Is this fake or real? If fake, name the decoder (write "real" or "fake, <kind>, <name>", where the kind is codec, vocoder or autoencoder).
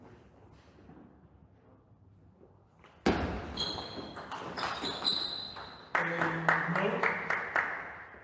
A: real